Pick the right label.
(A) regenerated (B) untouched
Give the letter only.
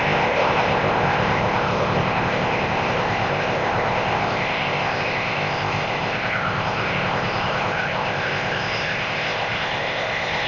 A